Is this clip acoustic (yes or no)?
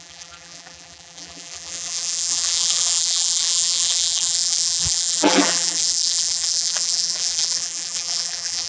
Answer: no